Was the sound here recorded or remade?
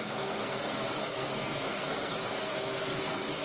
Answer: remade